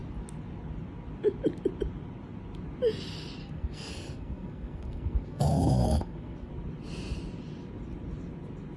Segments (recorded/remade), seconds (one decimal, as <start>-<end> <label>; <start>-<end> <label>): 0.0-3.4 recorded; 3.4-6.5 remade; 6.5-8.8 recorded